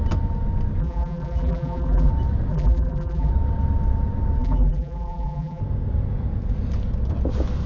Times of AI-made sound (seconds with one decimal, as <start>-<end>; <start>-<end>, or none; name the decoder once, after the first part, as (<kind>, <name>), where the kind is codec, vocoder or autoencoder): 0.8-2.1 (vocoder, BigVGAN v2); 2.5-3.3; 4.4-5.6